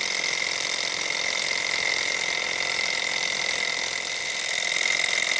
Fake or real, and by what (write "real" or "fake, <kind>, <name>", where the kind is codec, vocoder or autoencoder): real